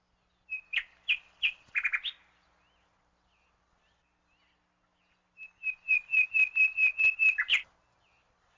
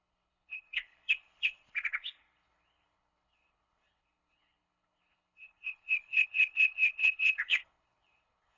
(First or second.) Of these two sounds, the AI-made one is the second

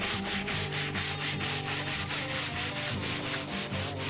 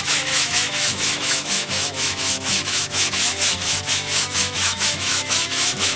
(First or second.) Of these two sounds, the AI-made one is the second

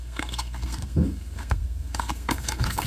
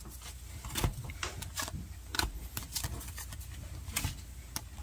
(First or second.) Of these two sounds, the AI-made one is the first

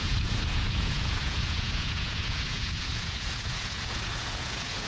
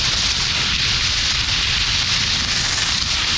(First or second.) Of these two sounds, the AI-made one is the first